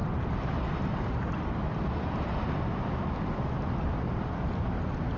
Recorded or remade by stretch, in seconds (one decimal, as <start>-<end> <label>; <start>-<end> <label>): 0.0-5.2 recorded